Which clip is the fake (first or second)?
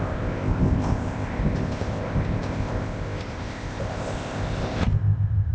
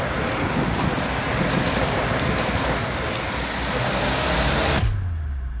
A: first